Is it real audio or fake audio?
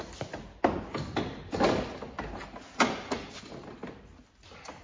real